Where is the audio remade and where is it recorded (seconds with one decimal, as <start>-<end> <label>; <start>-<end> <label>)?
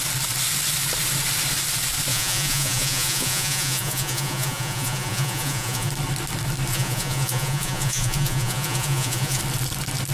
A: 0.0-2.1 recorded; 2.1-5.9 remade; 5.9-6.7 recorded; 6.7-9.4 remade; 9.4-10.1 recorded